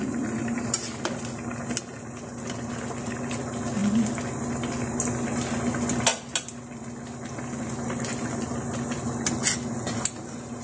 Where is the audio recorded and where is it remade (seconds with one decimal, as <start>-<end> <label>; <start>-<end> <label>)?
0.0-10.6 recorded